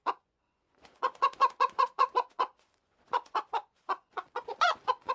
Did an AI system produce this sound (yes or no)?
yes